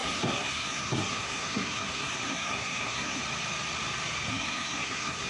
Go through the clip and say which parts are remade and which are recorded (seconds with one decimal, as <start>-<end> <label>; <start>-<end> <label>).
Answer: 0.0-3.2 remade; 3.2-4.3 recorded; 4.3-5.3 remade

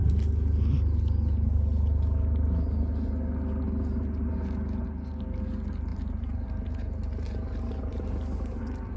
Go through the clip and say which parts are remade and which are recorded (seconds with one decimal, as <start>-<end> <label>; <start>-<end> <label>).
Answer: 0.0-5.9 recorded; 5.9-8.6 remade; 8.6-9.0 recorded